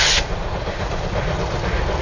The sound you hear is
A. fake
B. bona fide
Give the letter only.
B